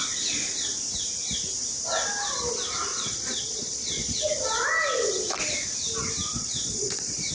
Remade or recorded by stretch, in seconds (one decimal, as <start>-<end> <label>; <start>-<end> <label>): 0.0-2.9 recorded; 2.9-4.2 remade; 4.2-6.3 recorded; 6.3-7.3 remade

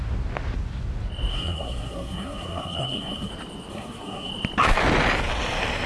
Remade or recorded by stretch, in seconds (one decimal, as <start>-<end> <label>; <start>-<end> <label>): 0.0-1.3 recorded; 1.3-3.3 remade; 3.3-3.7 recorded; 3.7-4.3 remade; 4.3-5.9 recorded

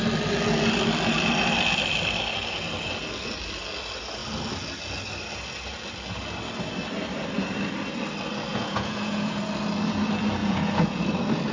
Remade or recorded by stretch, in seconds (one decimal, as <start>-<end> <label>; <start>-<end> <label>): 0.0-8.5 recorded; 8.5-9.4 remade; 9.4-10.4 recorded; 10.4-11.0 remade; 11.0-11.5 recorded

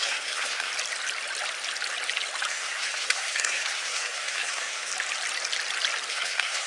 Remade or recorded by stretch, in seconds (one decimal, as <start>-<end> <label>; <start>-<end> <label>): 0.0-0.7 remade; 0.7-2.5 recorded; 2.5-4.9 remade; 4.9-6.1 recorded; 6.1-6.7 remade

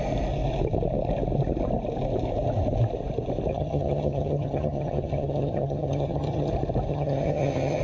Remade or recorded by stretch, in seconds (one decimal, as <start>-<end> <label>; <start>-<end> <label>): 0.0-3.5 recorded; 3.5-6.5 remade; 6.5-6.9 recorded; 6.9-7.8 remade

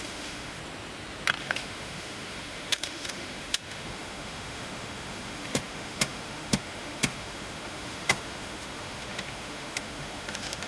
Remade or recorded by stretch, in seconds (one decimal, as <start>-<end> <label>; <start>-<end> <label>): 0.0-0.6 remade; 0.6-1.4 recorded; 1.4-10.7 remade

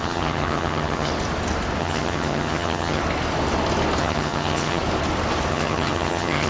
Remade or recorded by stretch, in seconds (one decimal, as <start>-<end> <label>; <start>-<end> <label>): 0.0-1.1 remade; 1.1-1.8 recorded; 1.8-3.0 remade; 3.0-4.0 recorded; 4.0-4.8 remade; 4.8-5.5 recorded; 5.5-6.5 remade

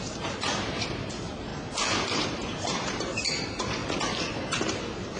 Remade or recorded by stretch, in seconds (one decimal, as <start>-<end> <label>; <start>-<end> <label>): 0.0-1.5 remade; 1.5-2.2 recorded; 2.2-3.8 remade; 3.8-4.3 recorded; 4.3-5.2 remade